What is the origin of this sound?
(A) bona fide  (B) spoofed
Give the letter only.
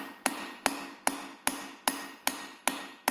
A